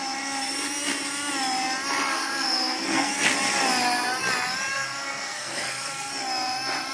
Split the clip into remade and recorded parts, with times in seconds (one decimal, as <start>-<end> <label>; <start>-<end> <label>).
0.0-2.1 recorded; 2.1-3.1 remade; 3.1-4.7 recorded; 4.7-6.1 remade; 6.1-6.9 recorded